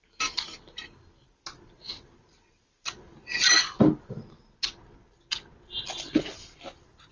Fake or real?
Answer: real